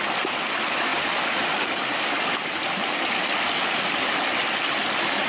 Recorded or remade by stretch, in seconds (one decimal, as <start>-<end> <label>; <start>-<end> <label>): 0.0-5.3 recorded